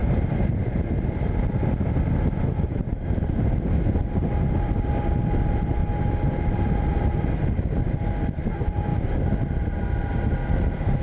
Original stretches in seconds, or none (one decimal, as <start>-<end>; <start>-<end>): 0.0-11.0